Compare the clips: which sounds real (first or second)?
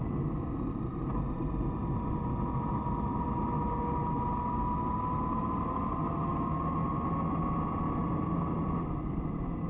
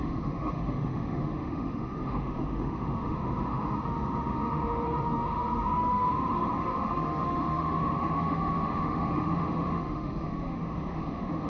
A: first